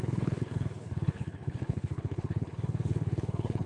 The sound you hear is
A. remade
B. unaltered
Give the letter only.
A